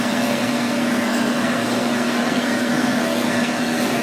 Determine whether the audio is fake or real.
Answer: fake